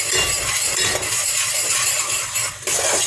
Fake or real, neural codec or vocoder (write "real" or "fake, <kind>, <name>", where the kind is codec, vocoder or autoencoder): real